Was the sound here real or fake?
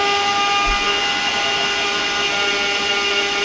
real